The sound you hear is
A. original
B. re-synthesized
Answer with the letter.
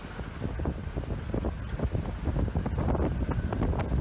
A